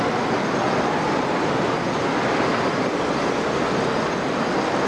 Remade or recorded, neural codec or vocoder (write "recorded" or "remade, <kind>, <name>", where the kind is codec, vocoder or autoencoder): recorded